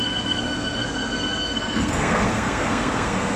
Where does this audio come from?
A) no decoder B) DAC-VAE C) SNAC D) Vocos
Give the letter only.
C